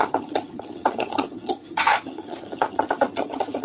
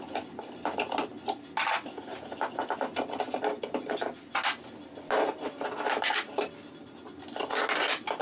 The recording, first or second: second